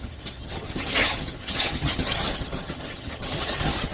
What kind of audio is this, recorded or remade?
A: remade